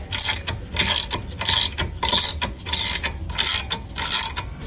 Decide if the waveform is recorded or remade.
recorded